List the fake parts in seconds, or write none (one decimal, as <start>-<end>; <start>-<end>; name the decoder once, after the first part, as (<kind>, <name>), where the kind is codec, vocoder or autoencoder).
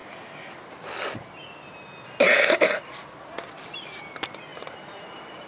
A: 4.5-5.5 (vocoder, BigVGAN v2)